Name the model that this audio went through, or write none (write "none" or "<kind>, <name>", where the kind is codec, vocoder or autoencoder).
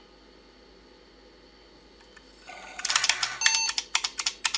none